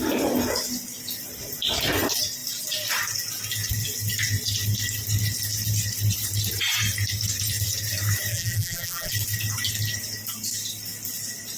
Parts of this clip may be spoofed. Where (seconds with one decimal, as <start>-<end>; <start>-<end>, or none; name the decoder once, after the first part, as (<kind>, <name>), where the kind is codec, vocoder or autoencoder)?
8.3-9.1 (vocoder, BigVGAN v2)